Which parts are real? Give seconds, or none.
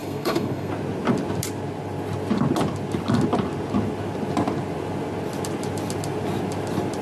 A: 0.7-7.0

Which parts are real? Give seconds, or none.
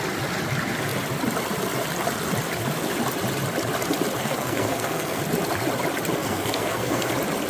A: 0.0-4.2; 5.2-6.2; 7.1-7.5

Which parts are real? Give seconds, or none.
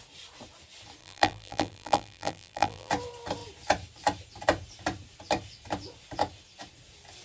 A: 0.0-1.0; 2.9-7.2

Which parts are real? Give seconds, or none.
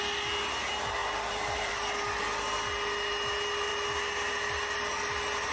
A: 0.0-1.0; 1.7-5.5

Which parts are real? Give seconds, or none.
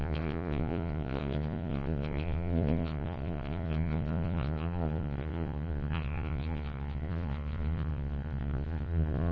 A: none